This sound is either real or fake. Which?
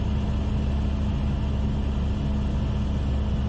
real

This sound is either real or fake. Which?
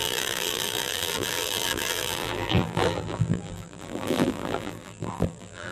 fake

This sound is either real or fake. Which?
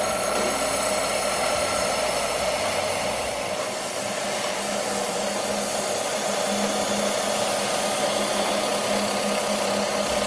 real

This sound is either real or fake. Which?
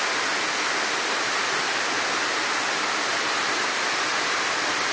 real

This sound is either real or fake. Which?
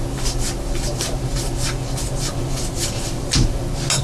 real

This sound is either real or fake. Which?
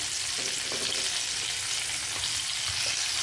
real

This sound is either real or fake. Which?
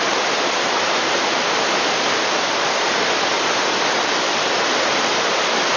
fake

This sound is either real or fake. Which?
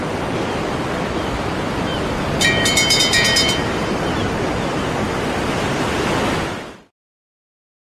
real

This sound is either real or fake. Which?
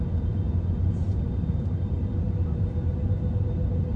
fake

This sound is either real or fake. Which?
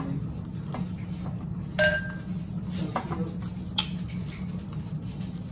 real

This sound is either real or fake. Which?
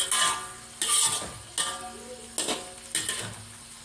real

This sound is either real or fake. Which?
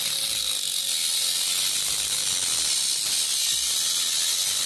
real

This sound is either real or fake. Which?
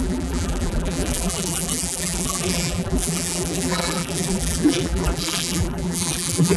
fake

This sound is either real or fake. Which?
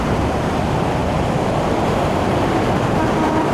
fake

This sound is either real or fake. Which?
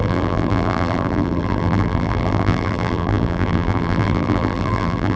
fake